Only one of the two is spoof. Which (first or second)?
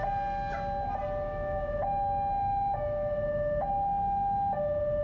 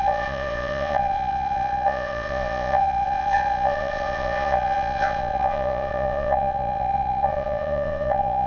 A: second